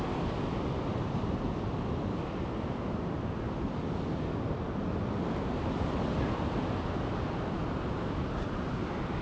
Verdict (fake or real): real